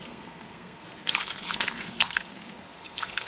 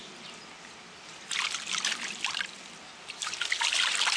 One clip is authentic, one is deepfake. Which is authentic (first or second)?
second